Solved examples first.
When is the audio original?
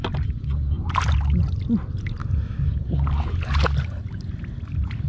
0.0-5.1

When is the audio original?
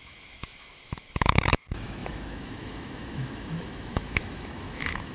none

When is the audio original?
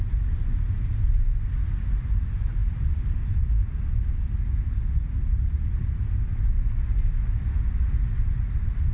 0.0-8.9